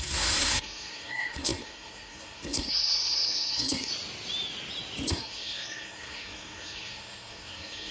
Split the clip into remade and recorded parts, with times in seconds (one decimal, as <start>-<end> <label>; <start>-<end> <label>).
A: 0.0-3.9 remade; 3.9-5.1 recorded; 5.1-7.9 remade